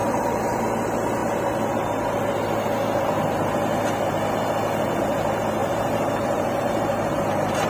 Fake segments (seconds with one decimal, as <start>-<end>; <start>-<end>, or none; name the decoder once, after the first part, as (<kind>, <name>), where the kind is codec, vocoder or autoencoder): 0.0-0.6 (vocoder, BigVGAN v2); 5.6-7.7